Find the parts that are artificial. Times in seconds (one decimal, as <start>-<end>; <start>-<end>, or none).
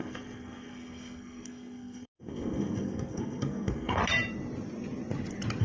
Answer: 0.0-4.0